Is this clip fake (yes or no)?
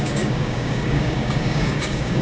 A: yes